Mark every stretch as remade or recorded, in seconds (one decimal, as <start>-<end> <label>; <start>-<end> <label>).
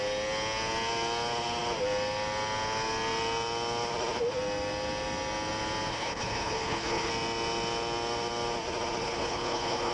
0.0-5.9 recorded; 5.9-7.1 remade; 7.1-9.0 recorded; 9.0-9.9 remade